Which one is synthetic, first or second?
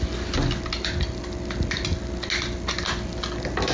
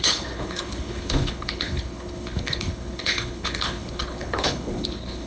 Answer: second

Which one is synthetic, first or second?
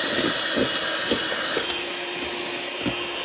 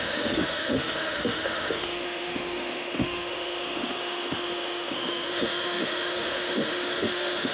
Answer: second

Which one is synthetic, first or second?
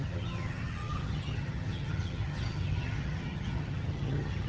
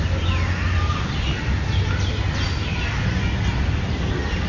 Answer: first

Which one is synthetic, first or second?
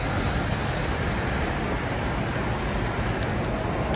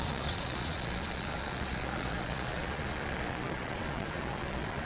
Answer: second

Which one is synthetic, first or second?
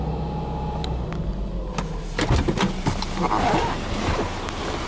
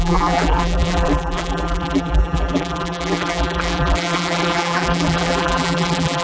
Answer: second